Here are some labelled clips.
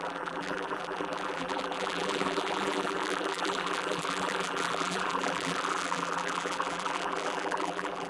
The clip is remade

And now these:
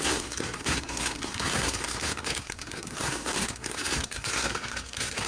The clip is remade